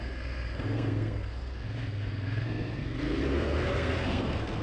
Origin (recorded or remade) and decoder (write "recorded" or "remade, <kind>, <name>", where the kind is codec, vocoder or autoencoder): remade, codec, SNAC